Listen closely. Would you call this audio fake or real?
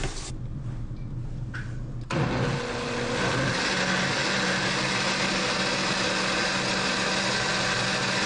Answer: real